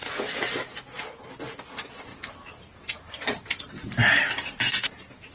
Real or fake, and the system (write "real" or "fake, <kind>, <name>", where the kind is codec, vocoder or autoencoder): real